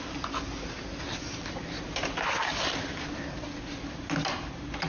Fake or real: real